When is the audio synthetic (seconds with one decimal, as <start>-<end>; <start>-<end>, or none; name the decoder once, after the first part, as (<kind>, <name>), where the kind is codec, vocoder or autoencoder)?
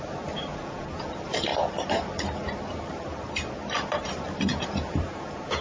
0.5-1.1 (vocoder, Vocos); 4.5-5.6